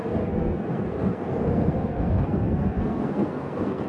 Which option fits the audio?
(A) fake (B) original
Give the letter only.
A